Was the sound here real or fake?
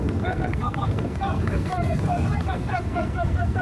fake